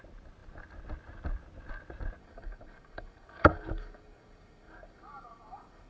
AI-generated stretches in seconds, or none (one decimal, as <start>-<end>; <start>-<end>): 2.2-5.9